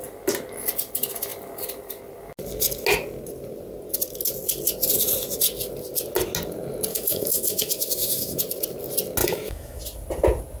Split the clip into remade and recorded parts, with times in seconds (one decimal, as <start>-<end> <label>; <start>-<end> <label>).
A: 0.0-6.9 recorded; 6.9-8.4 remade; 8.4-9.2 recorded; 9.2-9.8 remade; 9.8-10.6 recorded